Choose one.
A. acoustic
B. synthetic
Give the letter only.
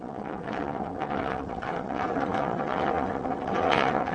B